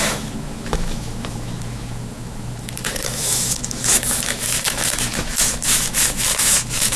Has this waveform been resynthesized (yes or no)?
yes